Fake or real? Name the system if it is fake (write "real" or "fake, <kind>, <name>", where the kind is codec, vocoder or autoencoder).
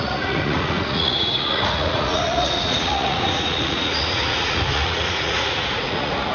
fake, vocoder, Vocos